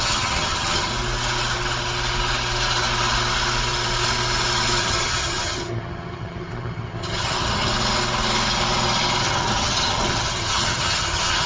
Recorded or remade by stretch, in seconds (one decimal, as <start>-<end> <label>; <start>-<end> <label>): 0.0-0.9 remade; 0.9-4.8 recorded; 4.8-7.7 remade; 7.7-9.2 recorded; 9.2-11.5 remade